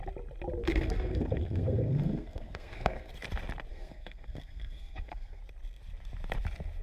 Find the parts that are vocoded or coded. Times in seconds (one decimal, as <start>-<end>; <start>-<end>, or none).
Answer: 0.6-3.1; 3.7-5.4